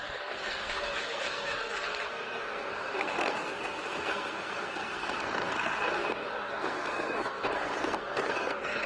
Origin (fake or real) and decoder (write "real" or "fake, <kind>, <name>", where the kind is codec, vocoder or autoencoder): fake, codec, SNAC